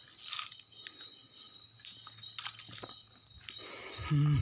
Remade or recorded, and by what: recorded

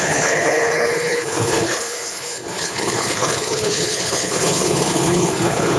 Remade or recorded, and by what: remade, codec, HILCodec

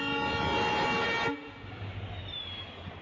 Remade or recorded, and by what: recorded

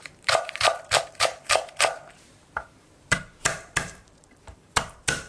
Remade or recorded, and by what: remade, vocoder, BigVGAN v2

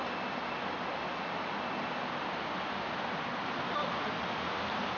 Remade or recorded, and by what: recorded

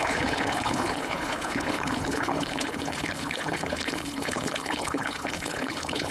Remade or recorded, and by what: remade, codec, HILCodec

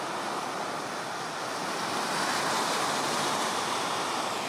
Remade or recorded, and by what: recorded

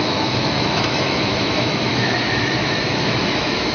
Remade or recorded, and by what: remade, autoencoder, DAC-VAE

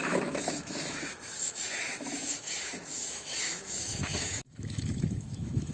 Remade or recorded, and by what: remade, autoencoder, DAC-VAE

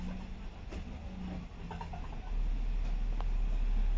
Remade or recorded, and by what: recorded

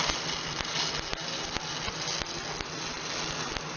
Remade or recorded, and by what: recorded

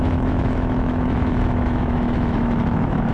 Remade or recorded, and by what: remade, autoencoder, DAC-VAE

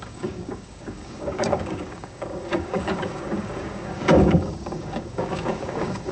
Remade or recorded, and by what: remade, codec, DAC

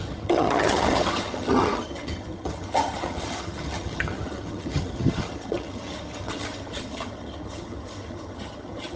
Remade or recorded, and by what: remade, vocoder, HiFi-GAN